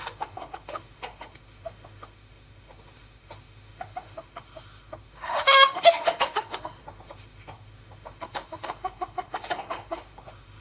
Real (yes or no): no